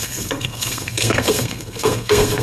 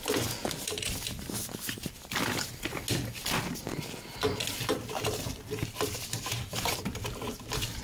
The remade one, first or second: first